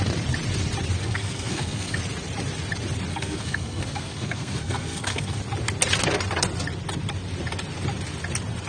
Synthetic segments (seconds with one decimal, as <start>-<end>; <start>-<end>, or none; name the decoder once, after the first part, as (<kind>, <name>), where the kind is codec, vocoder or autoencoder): 1.0-2.0 (codec, SNAC); 3.1-5.4